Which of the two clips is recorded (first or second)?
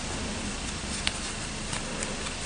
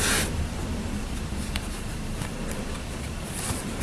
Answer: first